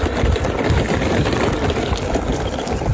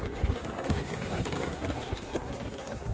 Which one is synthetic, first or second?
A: second